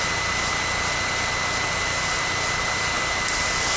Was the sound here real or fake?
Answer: real